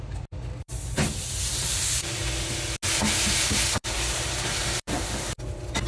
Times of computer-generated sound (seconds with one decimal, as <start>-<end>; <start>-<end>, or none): 0.0-0.7; 1.5-2.2; 3.0-5.9